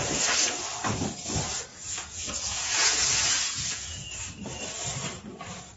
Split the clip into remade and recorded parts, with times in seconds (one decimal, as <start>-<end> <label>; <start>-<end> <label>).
0.0-1.7 recorded; 1.7-4.2 remade; 4.2-5.8 recorded